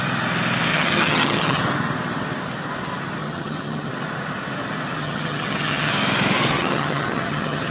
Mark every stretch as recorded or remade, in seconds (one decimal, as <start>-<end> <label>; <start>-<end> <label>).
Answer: 0.0-0.7 recorded; 0.7-1.6 remade; 1.6-3.2 recorded; 3.2-3.9 remade; 3.9-5.0 recorded; 5.0-5.9 remade; 5.9-6.6 recorded; 6.6-7.7 remade